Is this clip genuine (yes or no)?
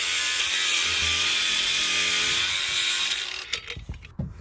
yes